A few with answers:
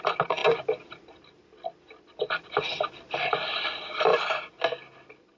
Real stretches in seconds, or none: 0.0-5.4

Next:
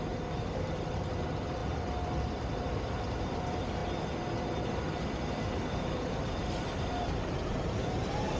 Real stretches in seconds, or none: 3.8-5.3

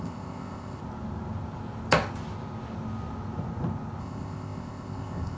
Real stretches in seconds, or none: 0.8-4.0

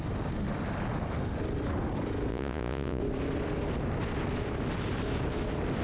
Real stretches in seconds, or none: 0.0-2.3; 3.0-5.8

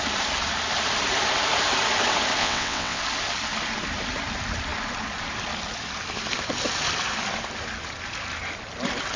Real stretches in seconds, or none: 0.0-2.4; 3.0-9.2

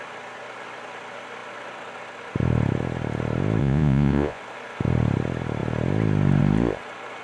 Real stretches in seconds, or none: 0.0-3.6; 4.4-7.2

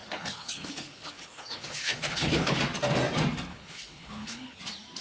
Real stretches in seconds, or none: 2.6-3.5; 4.6-5.0

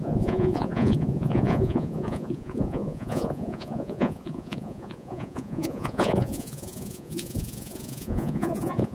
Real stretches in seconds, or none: none